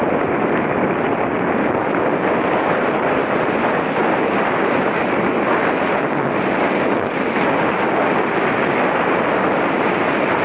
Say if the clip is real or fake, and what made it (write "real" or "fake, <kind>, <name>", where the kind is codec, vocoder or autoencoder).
real